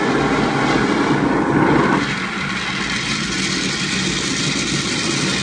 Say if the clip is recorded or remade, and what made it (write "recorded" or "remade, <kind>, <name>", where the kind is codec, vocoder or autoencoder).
recorded